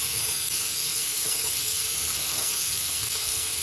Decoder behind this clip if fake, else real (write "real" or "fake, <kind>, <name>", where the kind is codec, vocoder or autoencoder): fake, codec, SNAC